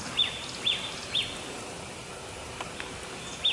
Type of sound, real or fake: real